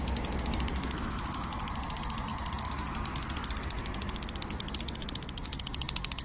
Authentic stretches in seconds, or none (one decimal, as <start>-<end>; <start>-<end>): 0.0-0.7; 1.6-6.2